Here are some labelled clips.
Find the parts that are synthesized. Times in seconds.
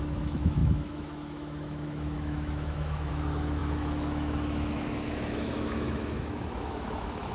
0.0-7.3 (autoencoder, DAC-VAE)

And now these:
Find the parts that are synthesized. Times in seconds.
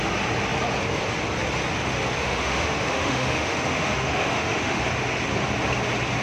2.2-4.8 (autoencoder, DAC-VAE)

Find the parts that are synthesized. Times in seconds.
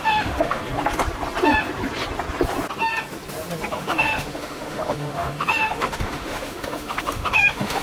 0.0-0.6 (autoencoder, DAC-VAE); 3.7-7.8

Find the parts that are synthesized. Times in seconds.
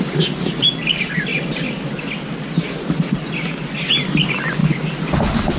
none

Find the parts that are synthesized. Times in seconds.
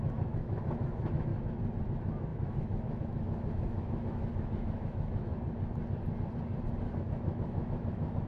0.0-1.3 (autoencoder, DAC-VAE); 1.8-5.3; 6.8-8.3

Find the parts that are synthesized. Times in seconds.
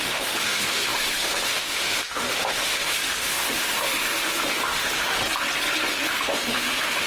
0.0-5.2 (autoencoder, DAC-VAE); 5.9-7.1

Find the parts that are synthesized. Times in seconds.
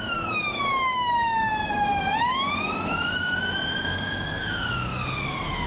0.0-4.9 (autoencoder, DAC-VAE)